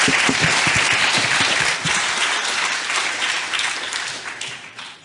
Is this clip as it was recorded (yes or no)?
no